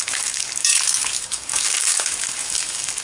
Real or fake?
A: fake